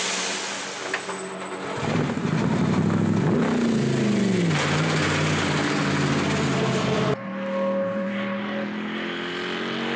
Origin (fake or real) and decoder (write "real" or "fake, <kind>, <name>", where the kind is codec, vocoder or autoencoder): real